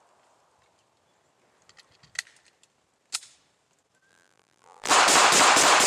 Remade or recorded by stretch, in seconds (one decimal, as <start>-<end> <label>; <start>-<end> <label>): 0.0-4.1 recorded; 4.1-4.9 remade; 4.9-5.9 recorded